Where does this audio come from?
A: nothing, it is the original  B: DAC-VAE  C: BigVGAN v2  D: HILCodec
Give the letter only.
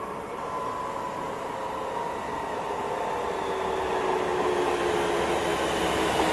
A